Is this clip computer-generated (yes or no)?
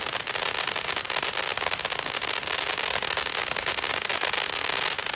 no